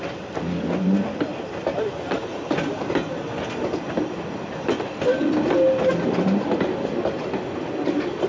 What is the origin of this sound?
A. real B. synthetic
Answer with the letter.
A